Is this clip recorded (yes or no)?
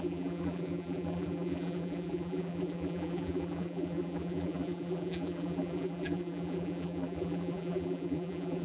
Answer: no